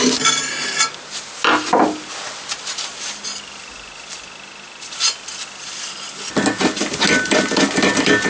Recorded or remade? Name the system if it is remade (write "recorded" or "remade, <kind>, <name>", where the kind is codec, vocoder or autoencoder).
recorded